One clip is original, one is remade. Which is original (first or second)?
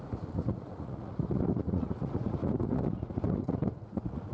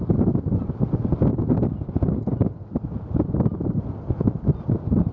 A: second